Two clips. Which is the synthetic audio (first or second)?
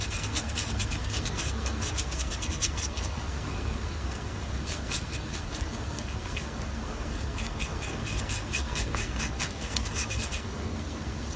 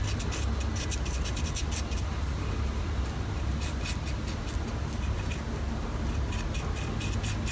first